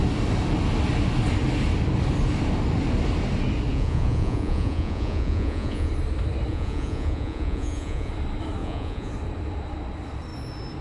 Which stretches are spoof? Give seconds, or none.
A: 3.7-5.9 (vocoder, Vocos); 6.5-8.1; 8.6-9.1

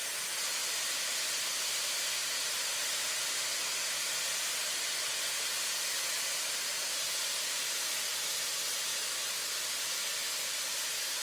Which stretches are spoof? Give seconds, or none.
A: 7.6-8.1 (vocoder, BigVGAN v2)